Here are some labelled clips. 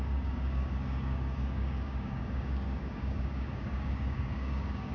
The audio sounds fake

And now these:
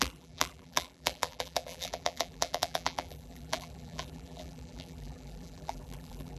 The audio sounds fake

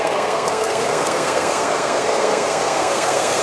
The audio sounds fake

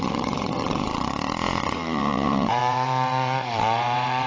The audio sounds fake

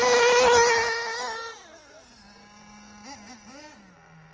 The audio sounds real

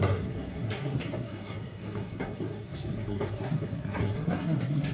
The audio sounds fake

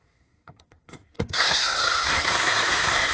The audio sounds fake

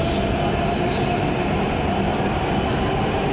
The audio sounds real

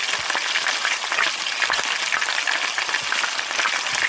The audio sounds real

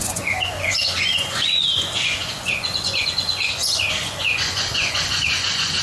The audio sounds fake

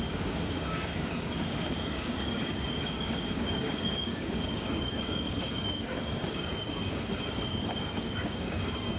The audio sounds fake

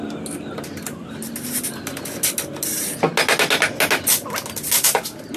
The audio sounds real